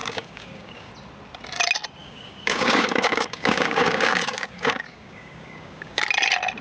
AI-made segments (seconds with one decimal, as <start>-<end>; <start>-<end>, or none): 0.0-0.9; 2.0-6.0

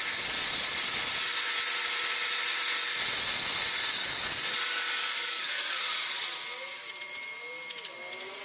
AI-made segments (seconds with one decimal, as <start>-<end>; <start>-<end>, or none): 3.9-4.5; 5.0-5.8

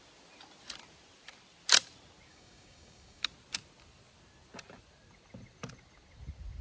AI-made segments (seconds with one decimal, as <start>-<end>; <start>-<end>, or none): 2.3-3.2

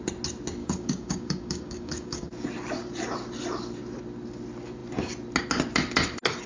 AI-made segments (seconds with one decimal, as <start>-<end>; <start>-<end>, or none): 0.6-2.3

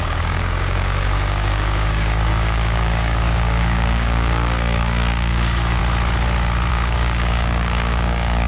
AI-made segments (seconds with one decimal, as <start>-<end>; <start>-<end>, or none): 0.0-5.8; 6.7-8.5

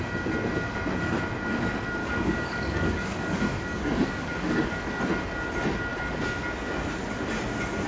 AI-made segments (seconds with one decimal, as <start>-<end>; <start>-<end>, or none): 2.0-5.0

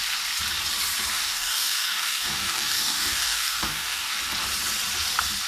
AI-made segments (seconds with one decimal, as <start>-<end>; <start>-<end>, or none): 1.1-4.2

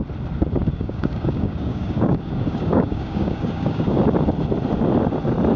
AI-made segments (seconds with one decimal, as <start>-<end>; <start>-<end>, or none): 0.6-4.0